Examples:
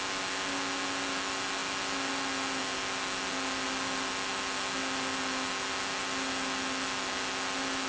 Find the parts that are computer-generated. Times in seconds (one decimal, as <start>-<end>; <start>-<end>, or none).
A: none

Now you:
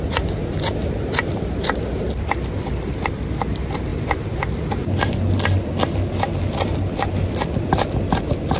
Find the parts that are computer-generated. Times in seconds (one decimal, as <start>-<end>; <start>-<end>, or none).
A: none

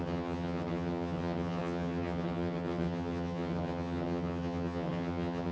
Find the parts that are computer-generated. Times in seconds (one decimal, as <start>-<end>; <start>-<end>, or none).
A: 0.0-5.5

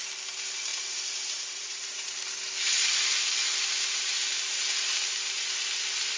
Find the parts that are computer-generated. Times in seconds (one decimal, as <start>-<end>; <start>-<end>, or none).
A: 0.7-2.1

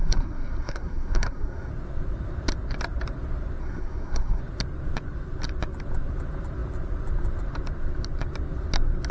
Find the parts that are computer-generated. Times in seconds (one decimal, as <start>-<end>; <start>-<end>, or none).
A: 0.0-1.7; 3.6-4.4